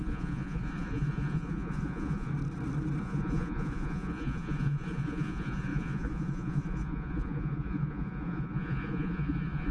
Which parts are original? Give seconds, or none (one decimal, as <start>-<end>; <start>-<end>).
2.3-3.0